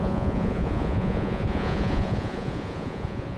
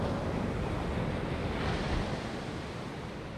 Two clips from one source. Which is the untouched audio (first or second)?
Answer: second